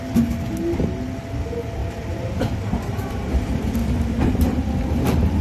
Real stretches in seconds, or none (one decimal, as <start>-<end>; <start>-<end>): 0.0-1.8; 3.3-3.8